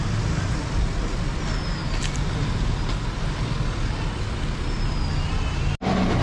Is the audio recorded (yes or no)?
yes